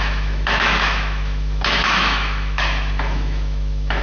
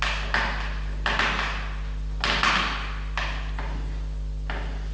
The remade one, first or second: first